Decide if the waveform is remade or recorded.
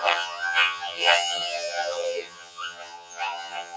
remade